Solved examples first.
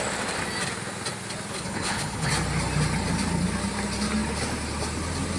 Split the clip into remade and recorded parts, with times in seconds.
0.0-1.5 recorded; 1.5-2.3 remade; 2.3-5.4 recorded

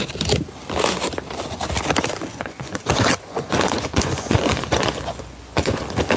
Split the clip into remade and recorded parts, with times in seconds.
0.0-2.3 recorded; 2.3-5.8 remade; 5.8-6.2 recorded

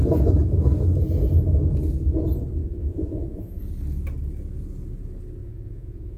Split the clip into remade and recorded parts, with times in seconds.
0.0-2.6 recorded; 2.6-3.6 remade; 3.6-5.4 recorded; 5.4-6.2 remade

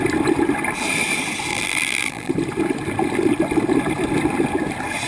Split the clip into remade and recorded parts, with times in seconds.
0.0-1.5 recorded; 1.5-2.3 remade; 2.3-5.1 recorded

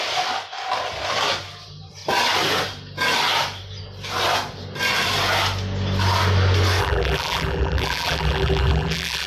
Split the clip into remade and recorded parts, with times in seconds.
0.0-6.8 recorded; 6.8-9.3 remade